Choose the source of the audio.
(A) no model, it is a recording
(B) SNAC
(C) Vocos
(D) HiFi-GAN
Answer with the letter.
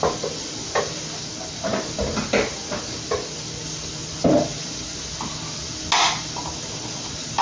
A